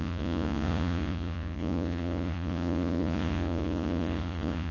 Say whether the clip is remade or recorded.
remade